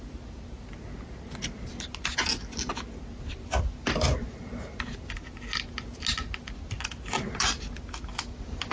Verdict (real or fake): real